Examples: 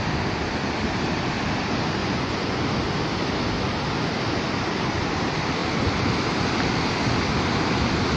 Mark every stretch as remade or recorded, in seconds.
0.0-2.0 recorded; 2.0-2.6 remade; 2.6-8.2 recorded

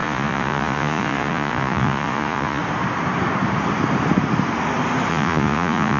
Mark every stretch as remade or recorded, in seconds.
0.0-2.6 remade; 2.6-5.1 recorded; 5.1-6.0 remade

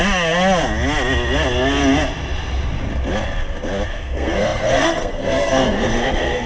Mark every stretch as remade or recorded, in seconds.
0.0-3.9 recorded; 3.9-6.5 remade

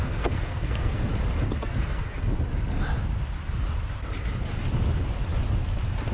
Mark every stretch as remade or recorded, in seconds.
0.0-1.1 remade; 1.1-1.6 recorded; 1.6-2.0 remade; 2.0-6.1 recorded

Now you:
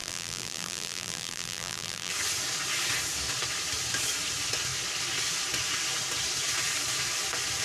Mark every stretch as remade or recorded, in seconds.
0.0-2.1 remade; 2.1-7.6 recorded